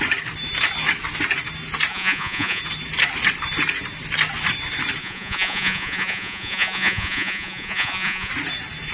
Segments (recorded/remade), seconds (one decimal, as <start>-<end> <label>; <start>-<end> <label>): 0.0-1.9 recorded; 1.9-2.6 remade; 2.6-5.0 recorded; 5.0-8.3 remade; 8.3-8.9 recorded